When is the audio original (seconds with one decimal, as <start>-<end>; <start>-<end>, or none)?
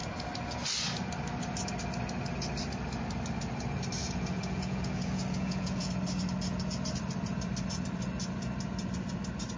0.0-4.0; 5.9-9.6